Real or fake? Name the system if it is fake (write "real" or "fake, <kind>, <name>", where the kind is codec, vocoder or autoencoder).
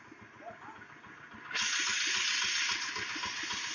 real